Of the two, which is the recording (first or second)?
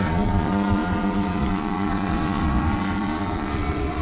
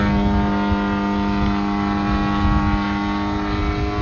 second